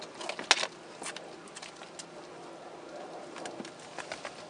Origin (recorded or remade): recorded